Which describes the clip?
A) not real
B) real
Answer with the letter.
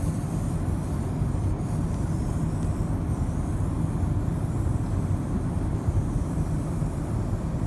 B